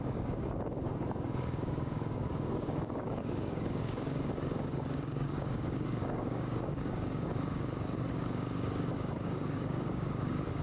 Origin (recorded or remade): remade